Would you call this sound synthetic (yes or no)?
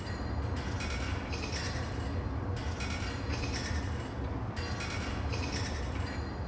no